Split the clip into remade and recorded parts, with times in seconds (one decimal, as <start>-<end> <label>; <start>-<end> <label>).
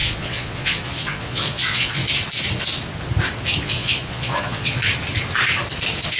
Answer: 0.0-2.0 remade; 2.0-3.6 recorded; 3.6-4.8 remade; 4.8-6.2 recorded